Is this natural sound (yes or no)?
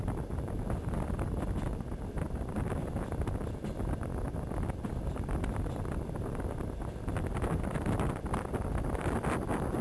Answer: yes